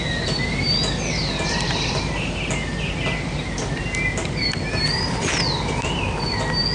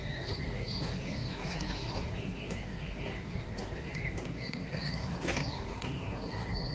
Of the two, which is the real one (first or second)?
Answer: first